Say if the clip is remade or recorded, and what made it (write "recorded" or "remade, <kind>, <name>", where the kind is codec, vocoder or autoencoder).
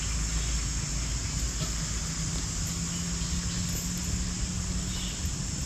recorded